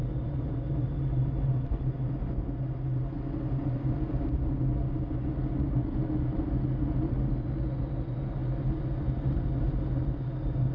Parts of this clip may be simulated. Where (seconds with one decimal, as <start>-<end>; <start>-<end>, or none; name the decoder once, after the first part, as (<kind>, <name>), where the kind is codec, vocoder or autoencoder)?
none